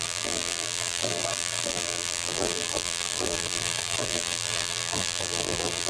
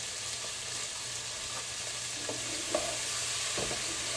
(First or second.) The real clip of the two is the second